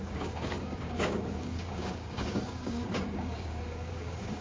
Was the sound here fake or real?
fake